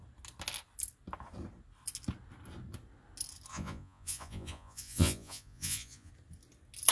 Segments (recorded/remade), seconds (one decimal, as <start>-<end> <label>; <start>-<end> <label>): 0.0-3.5 recorded; 3.5-6.1 remade; 6.1-6.9 recorded